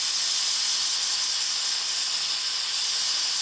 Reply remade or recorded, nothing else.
recorded